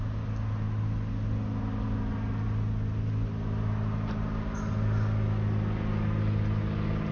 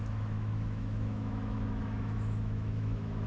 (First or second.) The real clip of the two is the first